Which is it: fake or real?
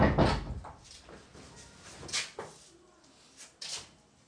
real